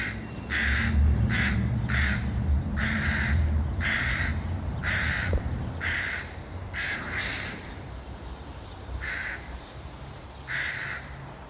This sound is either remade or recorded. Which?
remade